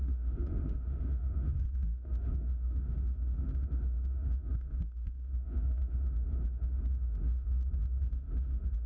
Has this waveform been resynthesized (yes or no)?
yes